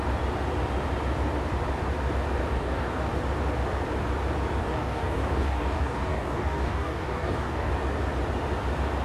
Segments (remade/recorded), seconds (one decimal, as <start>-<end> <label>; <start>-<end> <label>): 0.0-2.4 recorded; 2.4-3.2 remade; 3.2-4.6 recorded; 4.6-7.7 remade; 7.7-9.0 recorded